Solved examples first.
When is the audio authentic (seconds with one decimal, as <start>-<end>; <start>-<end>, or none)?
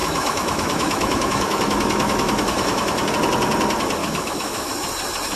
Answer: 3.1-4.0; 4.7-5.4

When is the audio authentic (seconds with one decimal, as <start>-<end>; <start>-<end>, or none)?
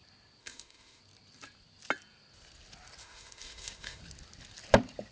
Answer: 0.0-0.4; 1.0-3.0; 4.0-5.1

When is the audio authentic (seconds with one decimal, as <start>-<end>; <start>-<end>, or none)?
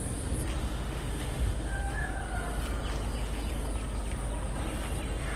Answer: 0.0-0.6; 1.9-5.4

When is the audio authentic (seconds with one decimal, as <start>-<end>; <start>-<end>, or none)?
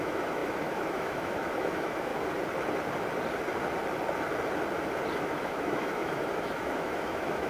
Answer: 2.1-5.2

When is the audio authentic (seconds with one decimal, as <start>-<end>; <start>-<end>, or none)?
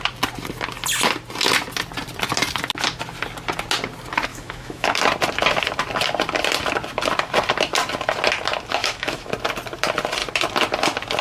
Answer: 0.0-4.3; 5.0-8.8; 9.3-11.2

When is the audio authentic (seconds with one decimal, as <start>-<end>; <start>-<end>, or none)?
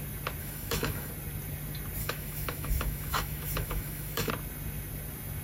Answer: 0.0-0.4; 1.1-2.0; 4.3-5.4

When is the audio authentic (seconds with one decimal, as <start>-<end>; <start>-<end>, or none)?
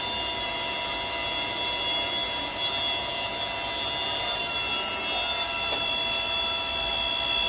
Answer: 0.0-7.5